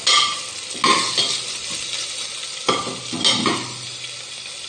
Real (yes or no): yes